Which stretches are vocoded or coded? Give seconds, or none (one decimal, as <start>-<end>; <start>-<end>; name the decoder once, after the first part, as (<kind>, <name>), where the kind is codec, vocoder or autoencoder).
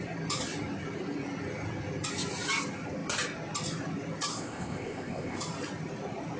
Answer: 4.3-5.4 (codec, ZipCodec)